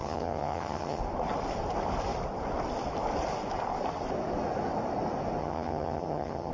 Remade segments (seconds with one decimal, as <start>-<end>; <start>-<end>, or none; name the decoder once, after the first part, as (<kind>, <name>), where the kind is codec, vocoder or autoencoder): 0.0-1.0 (vocoder, HiFi-GAN); 5.4-6.5